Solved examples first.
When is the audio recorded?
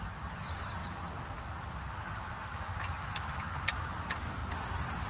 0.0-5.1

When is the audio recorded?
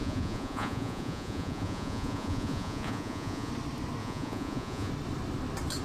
3.5-4.0; 4.9-5.8